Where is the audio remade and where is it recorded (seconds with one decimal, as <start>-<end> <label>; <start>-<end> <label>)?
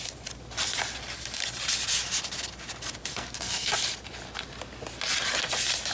0.0-3.1 recorded; 3.1-3.7 remade; 3.7-5.9 recorded